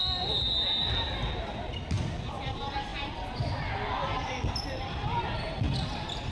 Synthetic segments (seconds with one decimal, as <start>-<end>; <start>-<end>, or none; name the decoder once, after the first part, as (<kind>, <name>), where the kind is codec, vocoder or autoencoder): 2.4-6.3 (vocoder, BigVGAN v2)